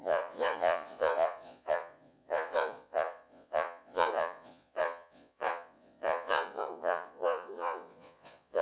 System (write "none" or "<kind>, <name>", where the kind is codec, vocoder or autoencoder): vocoder, Vocos